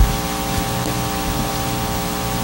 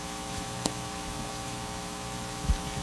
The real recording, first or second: first